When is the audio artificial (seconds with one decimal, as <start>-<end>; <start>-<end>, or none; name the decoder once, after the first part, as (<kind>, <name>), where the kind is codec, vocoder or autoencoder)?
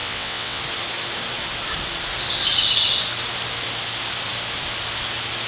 0.0-0.6 (vocoder, WaveNeXt)